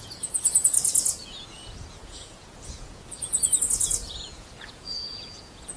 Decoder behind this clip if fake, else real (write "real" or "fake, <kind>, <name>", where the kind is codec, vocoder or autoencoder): fake, vocoder, Vocos